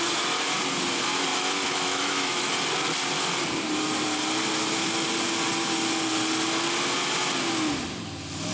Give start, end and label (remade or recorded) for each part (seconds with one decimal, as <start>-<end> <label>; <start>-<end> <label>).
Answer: 0.0-1.3 recorded; 1.3-2.5 remade; 2.5-8.5 recorded